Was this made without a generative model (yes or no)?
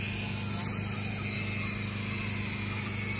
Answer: yes